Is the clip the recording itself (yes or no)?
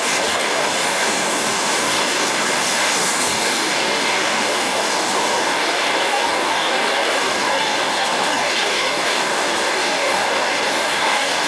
no